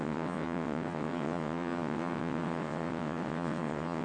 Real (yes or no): no